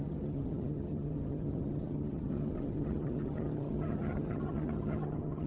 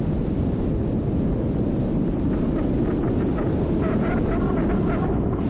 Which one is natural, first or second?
second